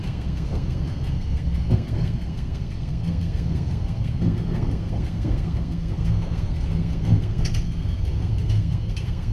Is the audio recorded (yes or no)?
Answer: no